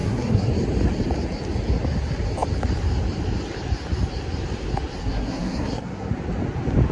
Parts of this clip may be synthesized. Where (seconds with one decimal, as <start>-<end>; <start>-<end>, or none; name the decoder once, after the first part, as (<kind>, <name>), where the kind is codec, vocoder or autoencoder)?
0.0-0.5 (codec, SNAC); 5.0-6.1